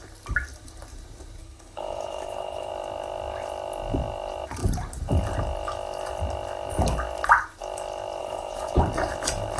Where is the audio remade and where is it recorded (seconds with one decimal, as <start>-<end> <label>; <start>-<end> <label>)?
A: 0.0-1.4 recorded; 1.4-2.7 remade; 2.7-8.2 recorded; 8.2-8.8 remade; 8.8-9.6 recorded